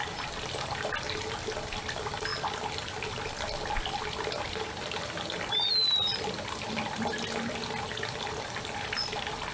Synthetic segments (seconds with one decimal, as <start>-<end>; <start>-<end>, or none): none

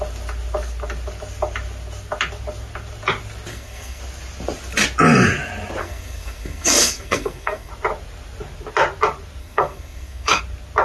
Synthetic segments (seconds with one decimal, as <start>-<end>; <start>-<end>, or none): 3.5-4.0; 5.8-7.7; 9.4-10.4

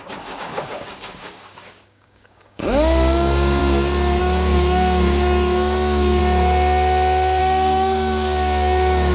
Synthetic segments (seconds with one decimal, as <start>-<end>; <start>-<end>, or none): 0.0-3.6; 4.2-6.2; 7.4-9.1

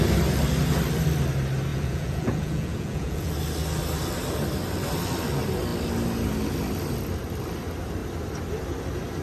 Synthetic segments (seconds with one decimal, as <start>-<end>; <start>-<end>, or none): 1.7-3.3

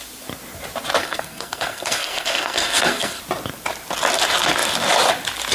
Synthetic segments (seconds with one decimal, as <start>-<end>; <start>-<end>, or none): 1.0-3.2